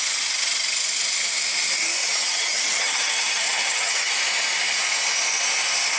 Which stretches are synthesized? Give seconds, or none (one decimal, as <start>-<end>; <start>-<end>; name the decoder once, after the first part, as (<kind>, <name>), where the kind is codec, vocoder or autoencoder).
2.0-4.1 (vocoder, HiFi-GAN)